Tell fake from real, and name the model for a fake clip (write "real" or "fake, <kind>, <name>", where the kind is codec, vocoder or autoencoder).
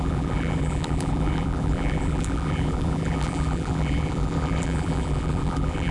fake, vocoder, BigVGAN v2